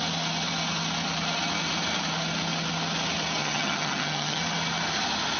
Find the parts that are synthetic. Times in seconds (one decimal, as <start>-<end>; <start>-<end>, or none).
3.4-4.4